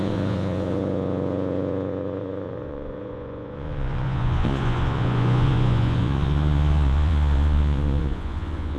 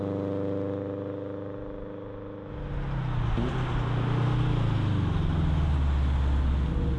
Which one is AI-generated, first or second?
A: first